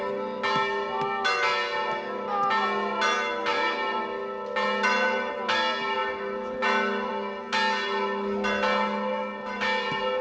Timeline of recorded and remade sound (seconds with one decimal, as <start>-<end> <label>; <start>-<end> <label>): 0.0-10.2 recorded